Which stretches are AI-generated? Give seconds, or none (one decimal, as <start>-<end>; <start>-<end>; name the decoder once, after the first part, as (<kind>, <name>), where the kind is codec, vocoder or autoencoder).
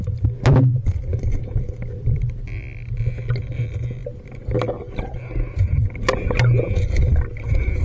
1.1-2.6 (vocoder, BigVGAN v2)